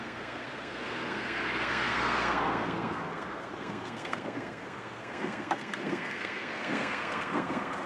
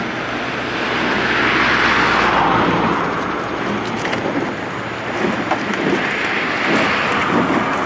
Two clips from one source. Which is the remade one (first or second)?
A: first